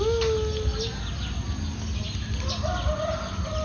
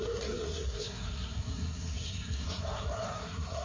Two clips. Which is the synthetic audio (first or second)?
second